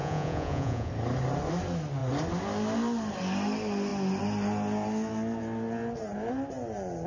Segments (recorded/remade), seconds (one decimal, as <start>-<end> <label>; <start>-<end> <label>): 0.0-0.9 remade; 0.9-7.1 recorded